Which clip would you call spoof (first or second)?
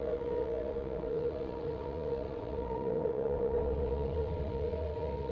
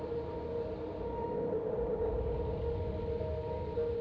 first